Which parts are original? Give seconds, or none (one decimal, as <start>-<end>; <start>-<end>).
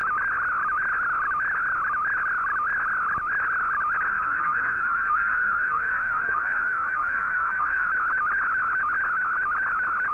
0.0-4.1; 7.9-10.1